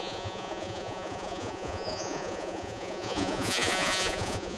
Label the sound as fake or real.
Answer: fake